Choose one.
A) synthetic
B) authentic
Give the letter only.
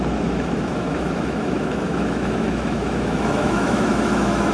A